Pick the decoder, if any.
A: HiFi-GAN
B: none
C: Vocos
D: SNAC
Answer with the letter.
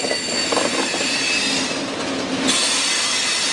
B